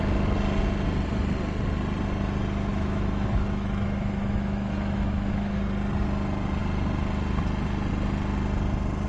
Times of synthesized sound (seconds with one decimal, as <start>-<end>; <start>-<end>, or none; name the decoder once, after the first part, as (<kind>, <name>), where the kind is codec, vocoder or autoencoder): 2.7-5.6 (autoencoder, DAC-VAE)